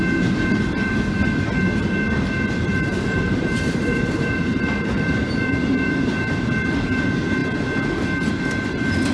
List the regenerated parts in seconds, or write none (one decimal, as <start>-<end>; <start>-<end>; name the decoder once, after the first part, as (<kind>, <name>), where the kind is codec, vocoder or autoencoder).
2.7-6.3 (vocoder, BigVGAN v2)